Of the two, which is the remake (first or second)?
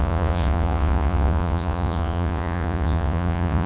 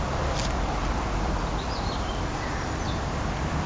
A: first